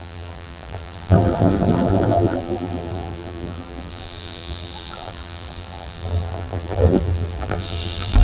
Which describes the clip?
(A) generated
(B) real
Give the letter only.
A